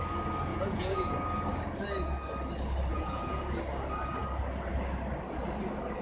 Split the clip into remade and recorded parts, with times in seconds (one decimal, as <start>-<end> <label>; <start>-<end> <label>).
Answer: 0.0-0.5 recorded; 0.5-1.1 remade; 1.1-2.9 recorded; 2.9-3.6 remade; 3.6-6.0 recorded